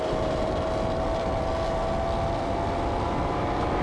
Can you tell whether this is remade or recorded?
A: recorded